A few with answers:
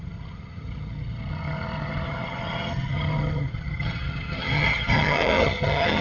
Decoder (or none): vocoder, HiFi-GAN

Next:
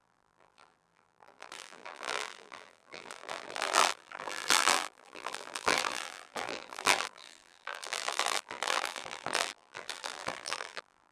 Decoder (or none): vocoder, BigVGAN v2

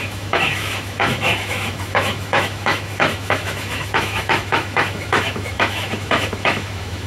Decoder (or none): autoencoder, DAC-VAE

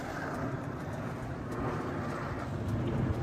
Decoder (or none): none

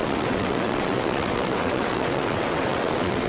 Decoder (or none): vocoder, WaveNeXt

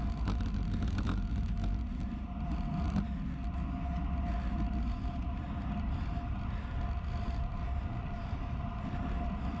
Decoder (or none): none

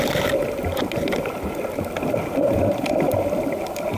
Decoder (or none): none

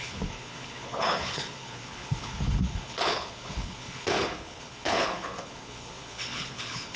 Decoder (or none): codec, HILCodec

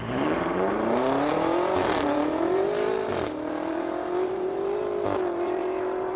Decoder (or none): vocoder, BigVGAN v2